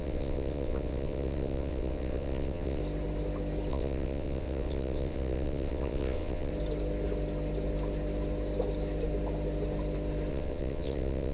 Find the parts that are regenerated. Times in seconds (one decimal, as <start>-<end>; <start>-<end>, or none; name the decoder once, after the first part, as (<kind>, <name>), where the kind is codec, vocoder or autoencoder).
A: 0.0-2.8 (vocoder, WaveNeXt); 3.7-6.5; 10.3-11.3